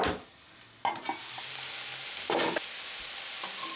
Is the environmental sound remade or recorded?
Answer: recorded